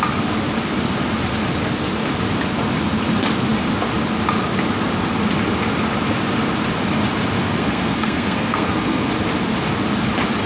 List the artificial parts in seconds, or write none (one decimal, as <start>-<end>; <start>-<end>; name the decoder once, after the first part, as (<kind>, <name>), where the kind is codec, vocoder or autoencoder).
7.4-9.1 (codec, SNAC)